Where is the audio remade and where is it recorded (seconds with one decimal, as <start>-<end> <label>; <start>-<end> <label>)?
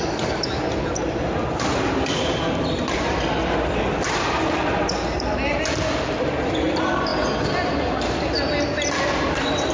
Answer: 0.0-9.7 recorded